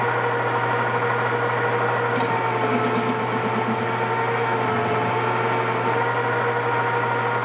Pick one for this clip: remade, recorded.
recorded